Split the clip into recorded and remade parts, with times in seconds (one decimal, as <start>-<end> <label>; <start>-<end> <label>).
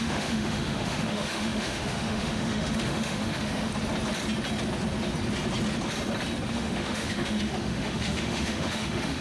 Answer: 0.0-3.7 remade; 3.7-6.5 recorded; 6.5-9.2 remade